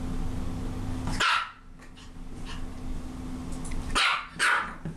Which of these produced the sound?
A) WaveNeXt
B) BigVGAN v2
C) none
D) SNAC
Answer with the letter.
C